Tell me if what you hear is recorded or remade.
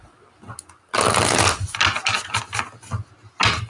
recorded